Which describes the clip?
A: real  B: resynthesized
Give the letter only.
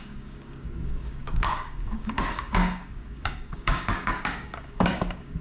B